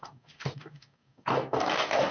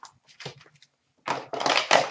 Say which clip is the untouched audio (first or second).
second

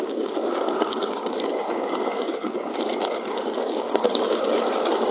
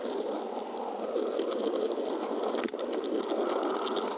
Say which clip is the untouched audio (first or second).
second